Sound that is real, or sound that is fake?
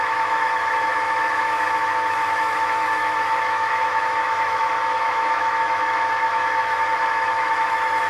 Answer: fake